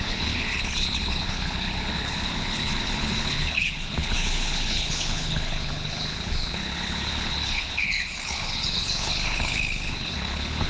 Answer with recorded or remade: remade